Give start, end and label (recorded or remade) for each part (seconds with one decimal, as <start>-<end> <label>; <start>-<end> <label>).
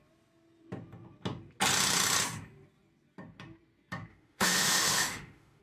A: 0.0-4.1 recorded; 4.1-5.6 remade